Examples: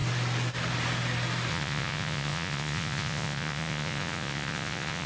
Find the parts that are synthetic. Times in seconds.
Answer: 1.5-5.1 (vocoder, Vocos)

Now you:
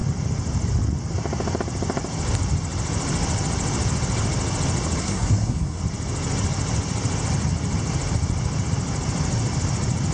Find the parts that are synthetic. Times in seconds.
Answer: 5.0-5.8 (codec, SNAC)

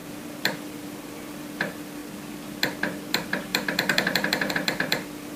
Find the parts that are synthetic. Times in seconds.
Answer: 0.6-2.0 (vocoder, BigVGAN v2); 3.1-5.4

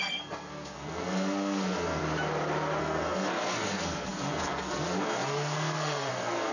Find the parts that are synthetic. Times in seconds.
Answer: 0.0-2.0 (codec, SNAC); 2.8-6.5

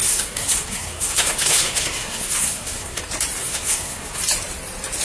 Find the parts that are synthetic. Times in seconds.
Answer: 0.0-3.0 (codec, SNAC); 3.4-4.2

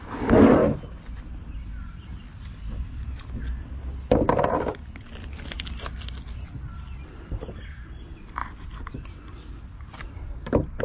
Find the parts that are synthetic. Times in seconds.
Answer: none

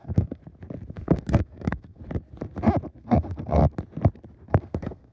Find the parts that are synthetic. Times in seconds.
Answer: 0.0-0.4 (codec, SNAC); 0.9-2.0; 3.0-3.6; 4.5-5.1

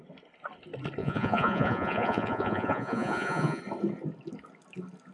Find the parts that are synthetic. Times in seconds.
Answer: 1.0-3.6 (vocoder, Vocos)